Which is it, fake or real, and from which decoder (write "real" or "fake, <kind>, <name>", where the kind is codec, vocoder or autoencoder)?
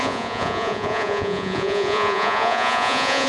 fake, vocoder, Vocos